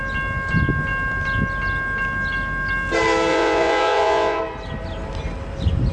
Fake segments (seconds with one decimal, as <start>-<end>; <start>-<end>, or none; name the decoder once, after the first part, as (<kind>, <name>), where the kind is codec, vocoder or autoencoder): 3.3-4.4 (vocoder, Vocos)